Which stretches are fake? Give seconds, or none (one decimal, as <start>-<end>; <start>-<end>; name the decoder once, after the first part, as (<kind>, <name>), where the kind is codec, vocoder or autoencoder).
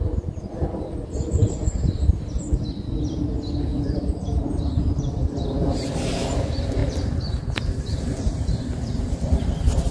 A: 3.7-5.3 (vocoder, BigVGAN v2); 6.8-9.5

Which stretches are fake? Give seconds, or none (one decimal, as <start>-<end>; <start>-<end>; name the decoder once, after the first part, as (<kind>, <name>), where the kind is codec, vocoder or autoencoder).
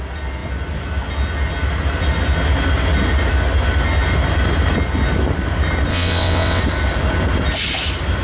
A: 5.9-6.6 (vocoder, WaveNeXt)